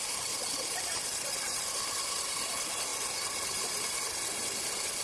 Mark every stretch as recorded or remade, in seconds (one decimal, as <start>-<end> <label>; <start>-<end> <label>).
0.0-5.0 recorded